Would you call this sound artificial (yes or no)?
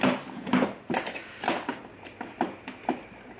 no